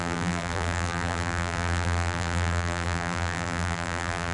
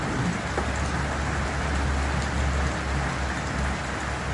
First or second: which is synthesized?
first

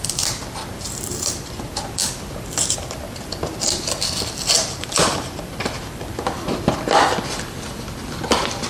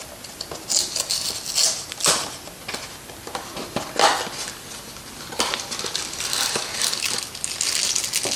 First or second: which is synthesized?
first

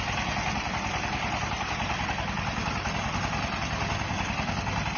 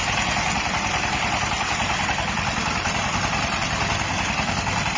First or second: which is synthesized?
second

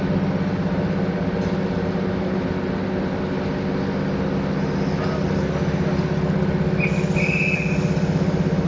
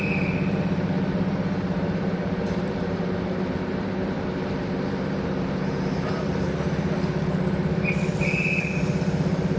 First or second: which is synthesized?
second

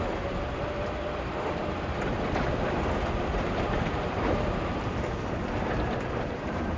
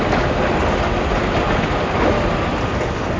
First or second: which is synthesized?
first